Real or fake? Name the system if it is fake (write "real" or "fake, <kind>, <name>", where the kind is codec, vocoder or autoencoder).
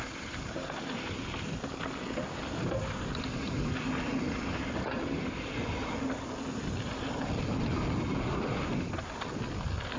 real